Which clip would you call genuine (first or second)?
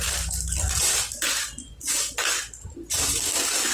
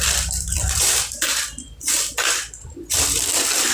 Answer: first